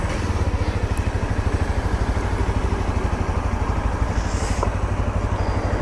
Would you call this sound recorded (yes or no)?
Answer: yes